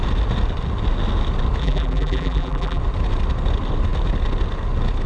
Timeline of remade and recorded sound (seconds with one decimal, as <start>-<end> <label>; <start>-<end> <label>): 0.0-1.6 recorded; 1.6-2.8 remade; 2.8-5.1 recorded

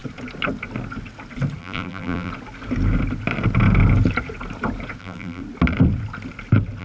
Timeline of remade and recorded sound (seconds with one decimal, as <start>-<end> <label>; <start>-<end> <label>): 0.0-1.6 recorded; 1.6-2.3 remade; 2.3-5.0 recorded; 5.0-5.4 remade; 5.4-6.8 recorded

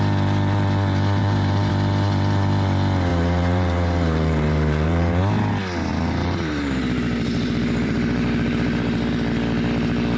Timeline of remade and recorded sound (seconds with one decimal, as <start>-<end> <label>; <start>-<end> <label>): 0.0-1.2 recorded; 1.2-1.7 remade; 1.7-3.1 recorded; 3.1-5.2 remade; 5.2-5.9 recorded; 5.9-9.1 remade; 9.1-10.2 recorded

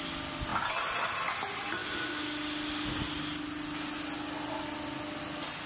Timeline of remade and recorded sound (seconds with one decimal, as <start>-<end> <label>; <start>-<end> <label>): 0.0-5.7 recorded